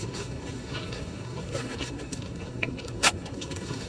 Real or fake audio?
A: fake